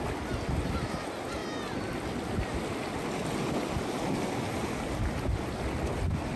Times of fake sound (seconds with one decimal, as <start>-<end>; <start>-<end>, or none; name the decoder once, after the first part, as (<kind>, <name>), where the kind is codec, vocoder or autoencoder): none